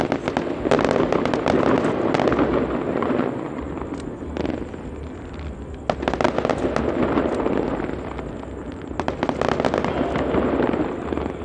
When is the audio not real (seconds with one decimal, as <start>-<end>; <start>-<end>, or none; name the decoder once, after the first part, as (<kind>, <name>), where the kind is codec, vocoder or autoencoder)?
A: 2.9-3.7 (vocoder, Vocos)